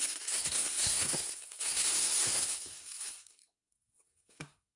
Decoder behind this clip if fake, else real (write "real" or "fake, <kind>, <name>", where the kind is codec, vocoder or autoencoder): fake, codec, SNAC